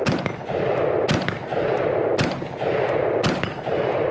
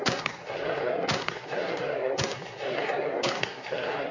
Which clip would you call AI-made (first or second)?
second